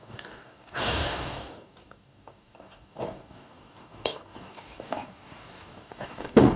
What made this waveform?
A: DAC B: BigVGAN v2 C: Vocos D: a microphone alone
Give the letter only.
A